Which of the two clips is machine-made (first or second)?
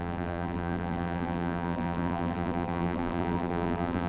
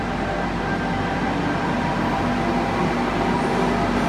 first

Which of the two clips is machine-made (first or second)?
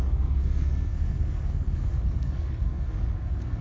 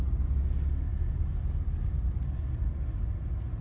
first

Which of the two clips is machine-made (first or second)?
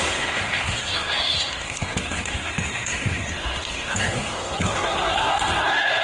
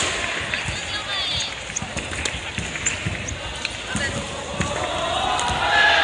first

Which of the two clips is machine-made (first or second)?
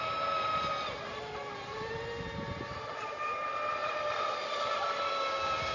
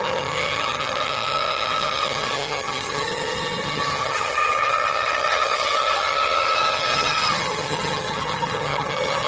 second